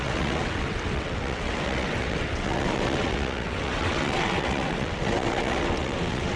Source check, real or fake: fake